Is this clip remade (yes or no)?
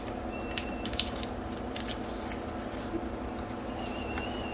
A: no